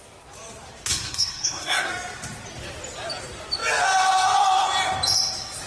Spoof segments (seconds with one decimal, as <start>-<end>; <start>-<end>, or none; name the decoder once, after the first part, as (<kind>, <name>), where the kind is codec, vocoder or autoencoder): 0.9-1.9 (codec, SNAC)